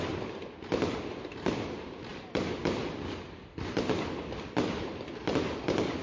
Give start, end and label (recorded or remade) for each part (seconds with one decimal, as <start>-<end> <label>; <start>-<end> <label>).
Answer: 0.0-6.0 recorded